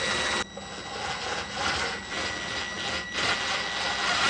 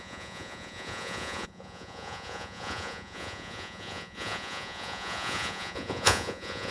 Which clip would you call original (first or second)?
first